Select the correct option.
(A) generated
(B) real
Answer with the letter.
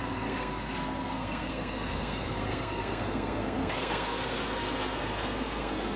A